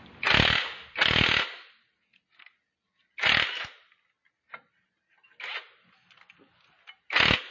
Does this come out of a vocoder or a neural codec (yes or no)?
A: no